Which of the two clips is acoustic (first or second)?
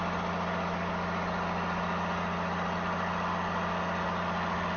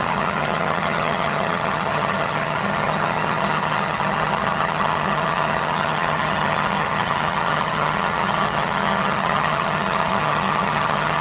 first